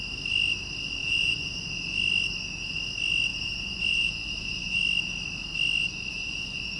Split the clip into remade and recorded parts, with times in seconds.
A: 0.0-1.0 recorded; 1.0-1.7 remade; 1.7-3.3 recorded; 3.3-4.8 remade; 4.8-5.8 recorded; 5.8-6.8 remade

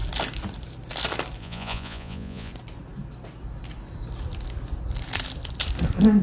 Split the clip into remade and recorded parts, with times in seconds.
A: 0.0-1.4 recorded; 1.4-2.5 remade; 2.5-6.2 recorded

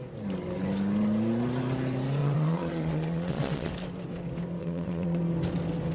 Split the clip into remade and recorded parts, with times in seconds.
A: 0.0-2.2 recorded; 2.2-3.7 remade; 3.7-4.6 recorded; 4.6-5.2 remade; 5.2-5.9 recorded

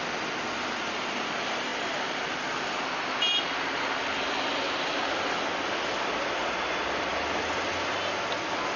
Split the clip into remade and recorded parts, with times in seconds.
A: 0.0-8.8 recorded

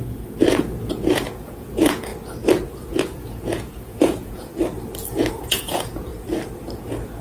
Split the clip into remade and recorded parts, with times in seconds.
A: 0.0-2.1 remade; 2.1-2.7 recorded; 2.7-4.5 remade; 4.5-5.3 recorded; 5.3-6.1 remade; 6.1-7.2 recorded

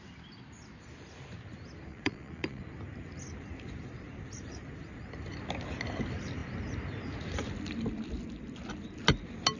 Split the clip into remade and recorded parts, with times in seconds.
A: 0.0-1.9 recorded; 1.9-2.6 remade; 2.6-9.6 recorded